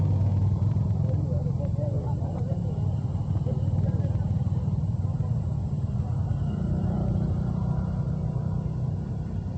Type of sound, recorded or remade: recorded